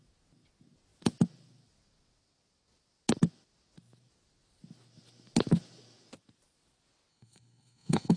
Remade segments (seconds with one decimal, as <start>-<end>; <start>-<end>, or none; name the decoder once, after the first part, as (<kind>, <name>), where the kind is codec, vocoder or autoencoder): 7.1-8.2 (codec, SNAC)